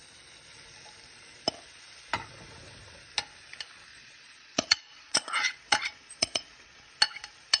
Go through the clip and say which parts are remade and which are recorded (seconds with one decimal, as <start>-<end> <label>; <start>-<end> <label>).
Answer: 0.0-3.9 recorded; 3.9-6.9 remade; 6.9-7.6 recorded